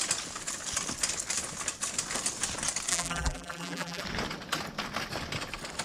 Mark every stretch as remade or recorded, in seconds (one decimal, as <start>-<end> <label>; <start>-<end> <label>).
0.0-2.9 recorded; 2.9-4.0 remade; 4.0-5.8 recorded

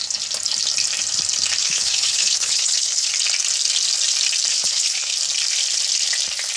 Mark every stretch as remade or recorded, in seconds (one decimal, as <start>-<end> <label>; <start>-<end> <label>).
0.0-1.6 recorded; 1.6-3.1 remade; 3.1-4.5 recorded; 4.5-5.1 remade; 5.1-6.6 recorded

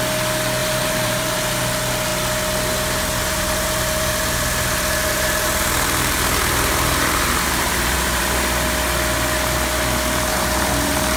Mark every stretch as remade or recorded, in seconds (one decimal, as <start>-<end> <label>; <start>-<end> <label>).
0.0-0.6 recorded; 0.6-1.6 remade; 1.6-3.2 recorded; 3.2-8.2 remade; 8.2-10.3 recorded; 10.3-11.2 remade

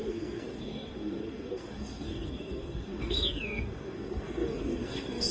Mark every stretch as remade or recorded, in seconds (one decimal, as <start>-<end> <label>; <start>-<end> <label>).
0.0-5.3 remade

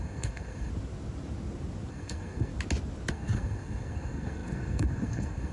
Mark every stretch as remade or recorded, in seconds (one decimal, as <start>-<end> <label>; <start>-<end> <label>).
0.0-0.7 remade; 0.7-1.9 recorded; 1.9-2.5 remade; 2.5-3.1 recorded; 3.1-5.5 remade